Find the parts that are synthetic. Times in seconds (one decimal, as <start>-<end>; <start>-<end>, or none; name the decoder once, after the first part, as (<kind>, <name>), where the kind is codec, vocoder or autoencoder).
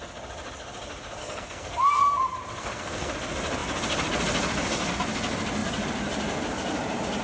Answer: 1.2-2.0 (codec, SNAC); 2.6-3.1